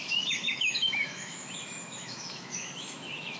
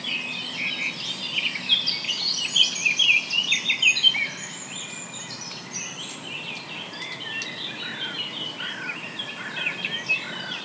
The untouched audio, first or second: second